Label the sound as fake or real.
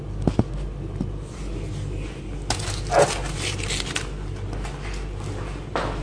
real